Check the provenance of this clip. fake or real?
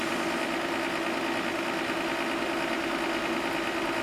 real